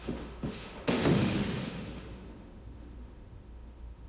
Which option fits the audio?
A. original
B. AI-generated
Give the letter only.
B